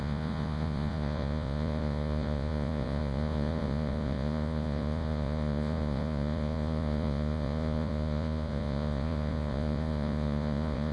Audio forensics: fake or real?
fake